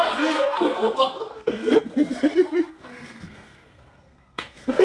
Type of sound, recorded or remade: remade